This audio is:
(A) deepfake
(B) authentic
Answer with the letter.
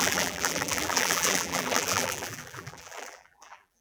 A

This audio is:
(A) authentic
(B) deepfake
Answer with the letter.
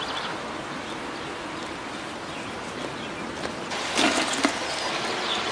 A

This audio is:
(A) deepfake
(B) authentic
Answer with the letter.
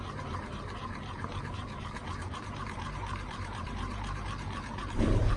A